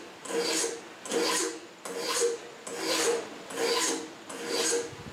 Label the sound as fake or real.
real